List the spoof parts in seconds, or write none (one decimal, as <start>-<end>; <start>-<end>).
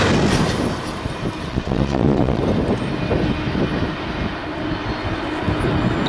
1.5-2.4